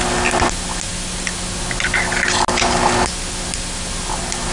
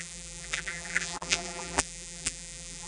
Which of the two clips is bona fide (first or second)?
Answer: first